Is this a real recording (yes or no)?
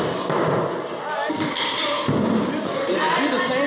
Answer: yes